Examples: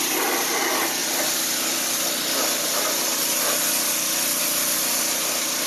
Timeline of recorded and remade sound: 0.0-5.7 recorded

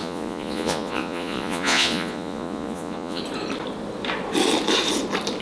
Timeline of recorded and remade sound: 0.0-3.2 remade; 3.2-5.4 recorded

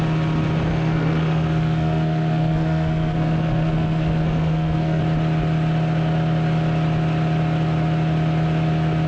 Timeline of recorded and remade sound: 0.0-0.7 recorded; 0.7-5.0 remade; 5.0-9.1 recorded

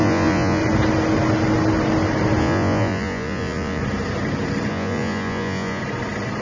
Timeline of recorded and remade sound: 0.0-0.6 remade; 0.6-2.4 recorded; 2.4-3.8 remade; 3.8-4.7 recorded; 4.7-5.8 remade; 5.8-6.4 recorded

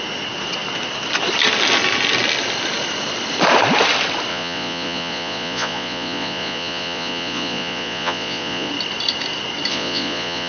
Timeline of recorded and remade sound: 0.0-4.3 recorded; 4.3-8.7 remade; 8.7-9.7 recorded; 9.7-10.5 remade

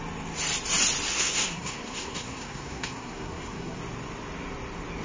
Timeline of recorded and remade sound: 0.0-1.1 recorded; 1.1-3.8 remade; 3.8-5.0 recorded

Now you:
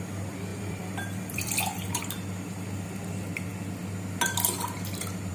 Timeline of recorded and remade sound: 0.0-0.5 recorded; 0.5-2.0 remade; 2.0-5.3 recorded

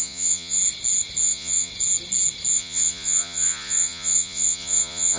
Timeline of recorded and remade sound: 0.0-0.6 remade; 0.6-1.2 recorded; 1.2-1.7 remade; 1.7-2.5 recorded; 2.5-5.2 remade